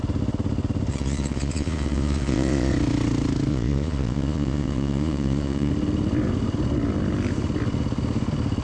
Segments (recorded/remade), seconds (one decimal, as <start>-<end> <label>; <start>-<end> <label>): 0.0-0.9 recorded; 0.9-2.7 remade; 2.7-3.5 recorded; 3.5-5.7 remade; 5.7-8.6 recorded